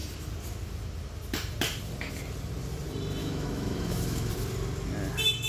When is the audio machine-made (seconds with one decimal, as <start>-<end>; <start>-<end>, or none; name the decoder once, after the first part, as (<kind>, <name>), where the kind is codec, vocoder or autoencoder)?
3.2-4.3 (autoencoder, DAC-VAE)